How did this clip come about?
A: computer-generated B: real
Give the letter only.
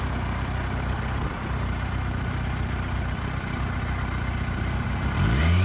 B